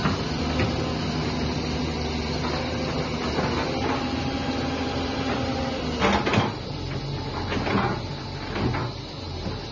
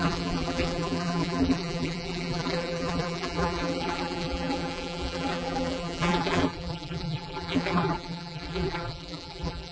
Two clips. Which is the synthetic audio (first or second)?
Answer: second